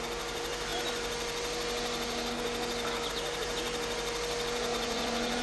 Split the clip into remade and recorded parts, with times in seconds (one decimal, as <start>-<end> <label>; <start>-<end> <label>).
0.0-4.7 recorded; 4.7-5.4 remade